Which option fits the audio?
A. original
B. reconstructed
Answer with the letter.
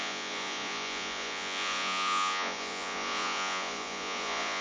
B